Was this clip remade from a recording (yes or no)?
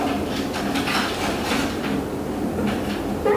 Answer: no